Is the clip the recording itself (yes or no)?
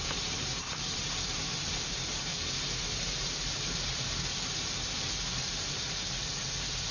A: no